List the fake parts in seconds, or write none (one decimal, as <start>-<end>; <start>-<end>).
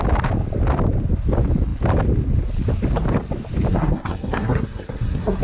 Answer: 3.7-5.4